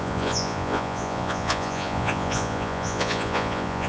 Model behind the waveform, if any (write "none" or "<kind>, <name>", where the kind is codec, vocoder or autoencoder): vocoder, Vocos